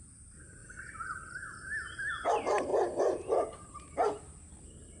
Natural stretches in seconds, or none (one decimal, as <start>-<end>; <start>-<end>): 0.0-5.0